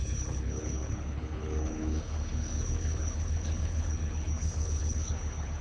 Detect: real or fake fake